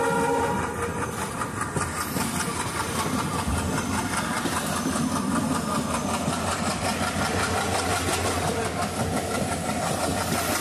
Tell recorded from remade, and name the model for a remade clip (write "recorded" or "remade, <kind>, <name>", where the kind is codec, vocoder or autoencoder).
recorded